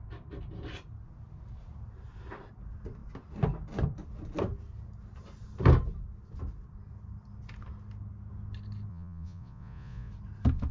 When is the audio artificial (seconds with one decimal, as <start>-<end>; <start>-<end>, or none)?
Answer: 8.9-10.1